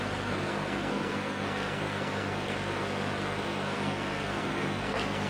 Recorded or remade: remade